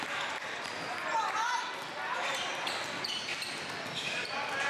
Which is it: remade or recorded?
recorded